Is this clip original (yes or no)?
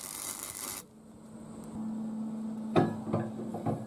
yes